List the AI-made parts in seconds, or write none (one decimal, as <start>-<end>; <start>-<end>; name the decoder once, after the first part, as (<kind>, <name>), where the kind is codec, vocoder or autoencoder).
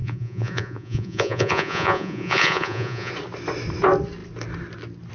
0.0-3.1 (vocoder, Vocos)